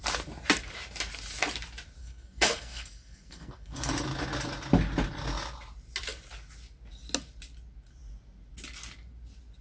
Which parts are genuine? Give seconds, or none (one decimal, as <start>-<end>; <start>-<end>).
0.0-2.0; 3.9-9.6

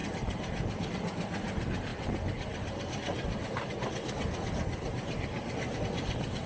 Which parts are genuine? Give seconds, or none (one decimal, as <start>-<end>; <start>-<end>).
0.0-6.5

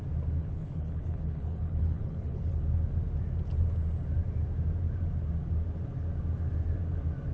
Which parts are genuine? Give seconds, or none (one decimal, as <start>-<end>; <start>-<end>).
0.0-0.4; 2.6-7.3

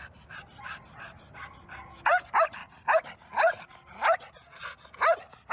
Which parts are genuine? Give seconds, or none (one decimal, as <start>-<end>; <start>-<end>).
0.0-5.5

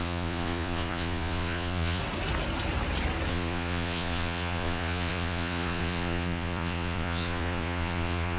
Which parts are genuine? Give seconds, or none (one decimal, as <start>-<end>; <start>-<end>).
2.0-3.3

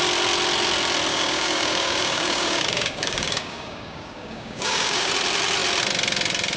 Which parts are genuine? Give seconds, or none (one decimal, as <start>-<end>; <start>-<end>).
0.0-1.1; 5.1-6.6

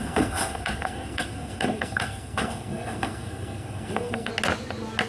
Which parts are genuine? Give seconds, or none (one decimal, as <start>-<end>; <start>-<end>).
4.3-5.1

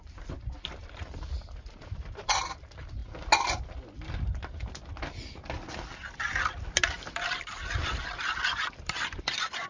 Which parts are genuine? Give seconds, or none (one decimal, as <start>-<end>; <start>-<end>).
3.0-6.7